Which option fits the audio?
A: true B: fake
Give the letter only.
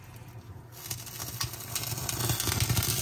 A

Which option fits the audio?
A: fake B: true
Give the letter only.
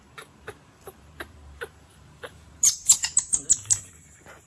A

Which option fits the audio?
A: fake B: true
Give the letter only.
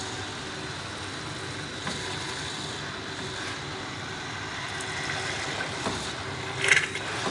B